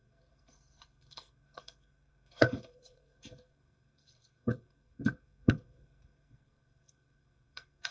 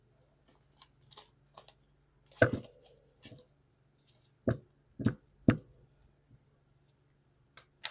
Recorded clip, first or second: second